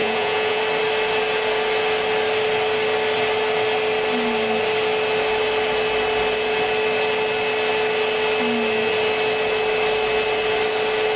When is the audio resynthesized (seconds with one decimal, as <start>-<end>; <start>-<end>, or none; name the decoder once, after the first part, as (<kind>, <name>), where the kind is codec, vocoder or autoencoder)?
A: 0.0-0.6 (vocoder, Vocos)